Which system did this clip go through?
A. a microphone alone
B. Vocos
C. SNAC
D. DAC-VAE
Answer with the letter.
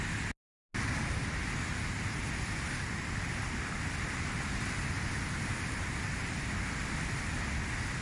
A